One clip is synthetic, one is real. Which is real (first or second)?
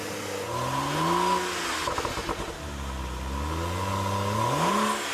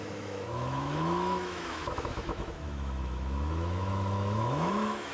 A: first